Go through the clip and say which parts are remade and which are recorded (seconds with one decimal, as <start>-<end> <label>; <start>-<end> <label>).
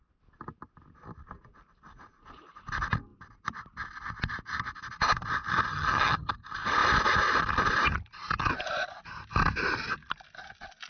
0.0-5.7 recorded; 5.7-6.3 remade; 6.3-10.9 recorded